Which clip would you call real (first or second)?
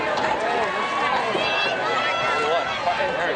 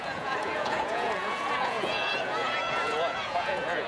first